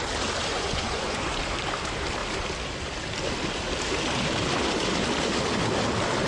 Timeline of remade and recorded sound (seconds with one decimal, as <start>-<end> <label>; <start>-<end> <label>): 0.0-0.5 recorded; 0.5-1.4 remade; 1.4-6.3 recorded

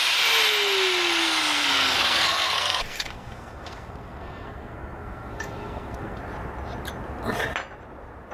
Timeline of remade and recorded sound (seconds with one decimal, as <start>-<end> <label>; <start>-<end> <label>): 0.0-1.2 recorded; 1.2-6.2 remade; 6.2-8.3 recorded